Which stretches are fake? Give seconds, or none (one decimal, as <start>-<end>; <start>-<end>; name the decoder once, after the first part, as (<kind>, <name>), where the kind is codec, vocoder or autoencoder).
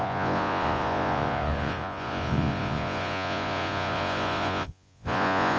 0.0-5.6 (vocoder, Vocos)